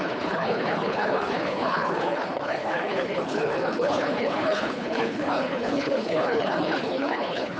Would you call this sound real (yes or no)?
no